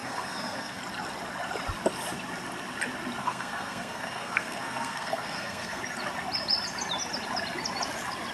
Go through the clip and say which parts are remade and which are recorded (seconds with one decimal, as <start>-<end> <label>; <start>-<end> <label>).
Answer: 0.0-0.8 remade; 0.8-3.2 recorded; 3.2-5.8 remade; 5.8-8.3 recorded